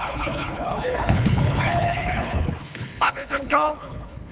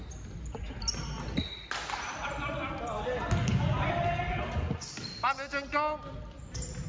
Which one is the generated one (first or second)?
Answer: first